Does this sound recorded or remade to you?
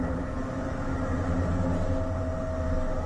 recorded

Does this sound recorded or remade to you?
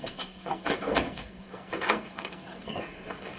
remade